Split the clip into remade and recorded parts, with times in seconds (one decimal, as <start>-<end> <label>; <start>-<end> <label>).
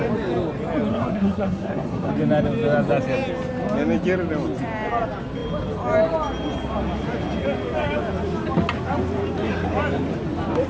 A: 0.0-0.9 recorded; 0.9-2.1 remade; 2.1-10.7 recorded